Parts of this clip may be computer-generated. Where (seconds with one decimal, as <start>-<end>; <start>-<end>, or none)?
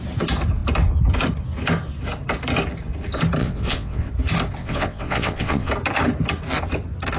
3.4-4.1; 4.6-5.7